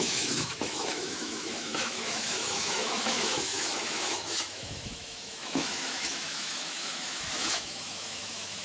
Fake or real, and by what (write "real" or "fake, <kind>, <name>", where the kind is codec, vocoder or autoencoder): fake, autoencoder, DAC-VAE